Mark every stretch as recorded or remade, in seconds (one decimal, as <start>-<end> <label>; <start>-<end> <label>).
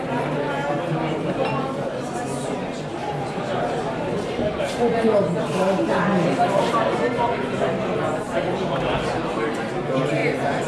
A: 0.0-3.0 recorded; 3.0-5.2 remade; 5.2-10.7 recorded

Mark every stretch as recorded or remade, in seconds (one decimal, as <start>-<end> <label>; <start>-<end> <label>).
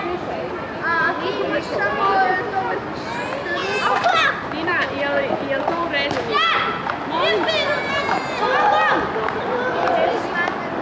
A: 0.0-10.8 recorded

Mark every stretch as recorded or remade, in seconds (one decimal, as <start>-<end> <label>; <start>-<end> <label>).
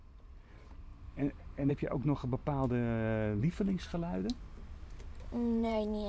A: 0.0-0.9 remade; 0.9-1.7 recorded; 1.7-2.4 remade; 2.4-3.4 recorded; 3.4-3.9 remade; 3.9-5.2 recorded; 5.2-6.1 remade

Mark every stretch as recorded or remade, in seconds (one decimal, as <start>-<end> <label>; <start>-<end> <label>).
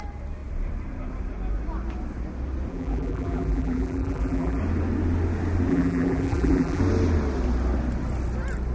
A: 0.0-2.7 recorded; 2.7-4.6 remade; 4.6-5.7 recorded; 5.7-6.8 remade; 6.8-8.7 recorded